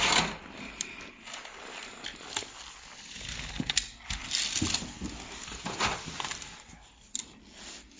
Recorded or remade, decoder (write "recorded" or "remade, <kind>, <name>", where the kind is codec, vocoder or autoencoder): recorded